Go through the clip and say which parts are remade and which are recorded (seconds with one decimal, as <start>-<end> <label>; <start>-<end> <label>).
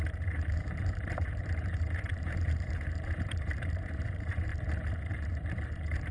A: 0.0-4.5 remade; 4.5-5.1 recorded; 5.1-6.1 remade